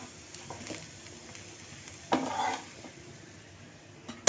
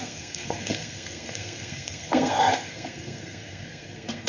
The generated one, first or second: second